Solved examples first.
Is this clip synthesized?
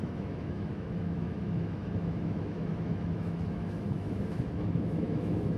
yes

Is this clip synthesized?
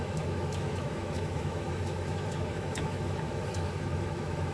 yes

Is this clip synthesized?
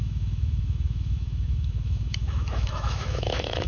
yes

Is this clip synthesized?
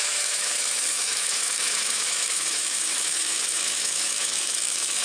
yes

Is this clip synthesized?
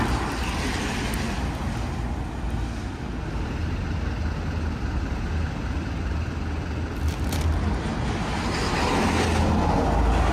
no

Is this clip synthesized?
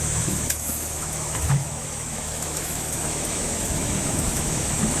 yes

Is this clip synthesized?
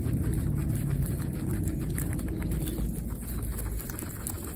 no